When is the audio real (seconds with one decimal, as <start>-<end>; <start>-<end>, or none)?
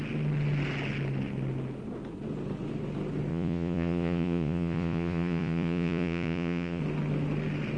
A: 0.0-3.3; 6.8-7.8